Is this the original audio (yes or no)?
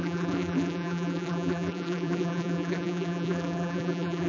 no